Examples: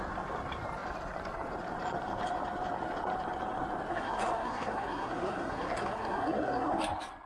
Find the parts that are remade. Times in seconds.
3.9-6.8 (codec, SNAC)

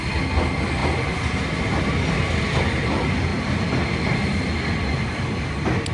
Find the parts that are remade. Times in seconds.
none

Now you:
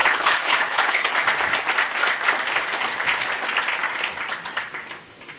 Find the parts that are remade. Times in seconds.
0.0-1.1 (codec, HILCodec)

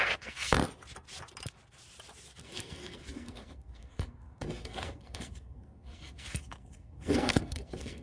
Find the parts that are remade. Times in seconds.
0.0-0.6 (codec, SNAC); 2.4-8.0